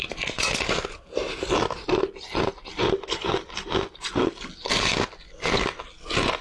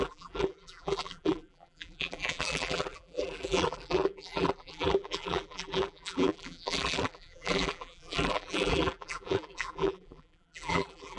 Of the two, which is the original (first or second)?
first